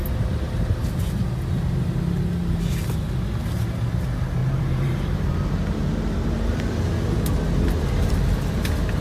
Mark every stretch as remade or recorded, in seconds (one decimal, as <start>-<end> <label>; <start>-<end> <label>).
0.0-4.4 recorded; 4.4-5.5 remade; 5.5-9.0 recorded